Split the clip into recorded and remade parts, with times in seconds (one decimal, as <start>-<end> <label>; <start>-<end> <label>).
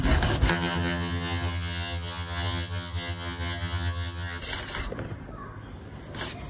0.0-0.5 recorded; 0.5-4.4 remade; 4.4-6.5 recorded